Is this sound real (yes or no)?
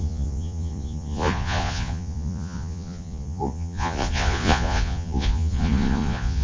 no